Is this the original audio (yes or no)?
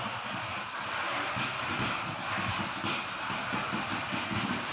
yes